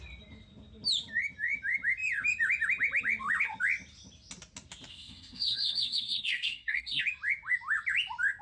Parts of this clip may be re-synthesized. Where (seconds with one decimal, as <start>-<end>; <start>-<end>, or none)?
4.9-7.0

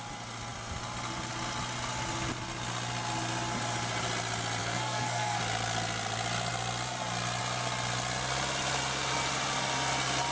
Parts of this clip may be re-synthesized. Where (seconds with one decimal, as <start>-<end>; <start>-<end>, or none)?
4.6-5.4